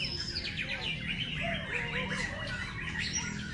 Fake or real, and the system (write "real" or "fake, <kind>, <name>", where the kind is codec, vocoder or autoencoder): real